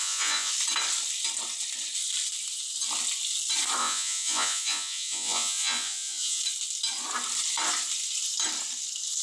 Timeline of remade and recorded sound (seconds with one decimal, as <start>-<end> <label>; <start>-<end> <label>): 0.0-0.5 remade; 0.5-3.8 recorded; 3.8-6.4 remade; 6.4-9.2 recorded